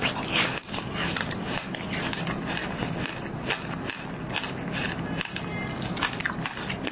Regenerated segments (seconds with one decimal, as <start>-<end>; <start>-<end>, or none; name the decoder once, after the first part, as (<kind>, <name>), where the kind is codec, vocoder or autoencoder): none